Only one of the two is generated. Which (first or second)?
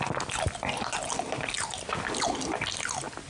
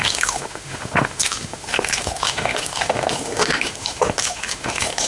second